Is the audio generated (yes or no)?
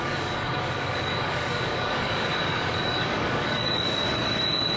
yes